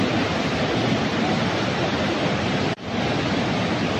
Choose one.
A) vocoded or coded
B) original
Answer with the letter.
B